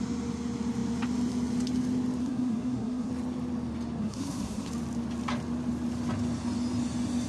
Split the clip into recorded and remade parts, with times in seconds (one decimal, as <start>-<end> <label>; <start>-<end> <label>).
0.0-2.2 recorded; 2.2-3.1 remade; 3.1-4.0 recorded; 4.0-4.7 remade; 4.7-7.3 recorded